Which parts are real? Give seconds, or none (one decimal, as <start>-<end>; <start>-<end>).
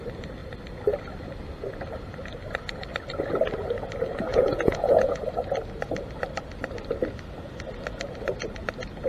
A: 0.0-4.3; 5.2-9.1